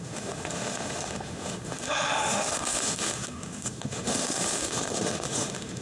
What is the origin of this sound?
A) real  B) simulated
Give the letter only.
B